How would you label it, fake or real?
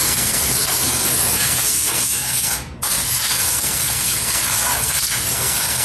fake